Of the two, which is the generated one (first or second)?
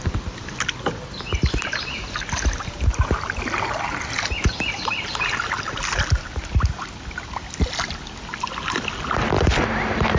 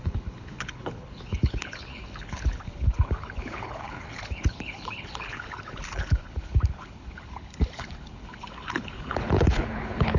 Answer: second